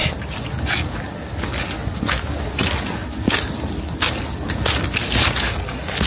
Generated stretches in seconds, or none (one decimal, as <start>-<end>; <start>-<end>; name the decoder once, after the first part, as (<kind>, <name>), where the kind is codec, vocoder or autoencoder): none